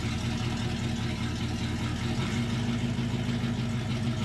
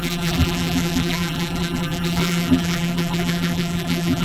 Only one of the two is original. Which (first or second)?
first